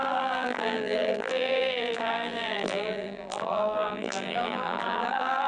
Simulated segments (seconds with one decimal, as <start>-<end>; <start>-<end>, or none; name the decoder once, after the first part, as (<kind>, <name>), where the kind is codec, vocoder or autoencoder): 0.0-5.5 (vocoder, BigVGAN v2)